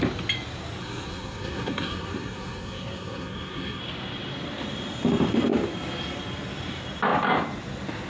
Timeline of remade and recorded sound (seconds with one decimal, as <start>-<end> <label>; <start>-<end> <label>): 0.0-0.8 recorded; 0.8-3.8 remade; 3.8-8.1 recorded